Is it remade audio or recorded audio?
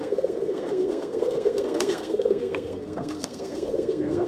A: remade